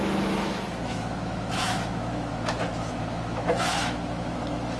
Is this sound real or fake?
fake